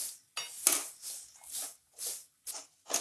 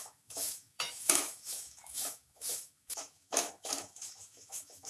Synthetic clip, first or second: second